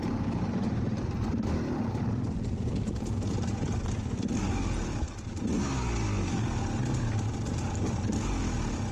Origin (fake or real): real